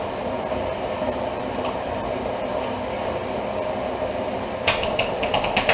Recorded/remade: remade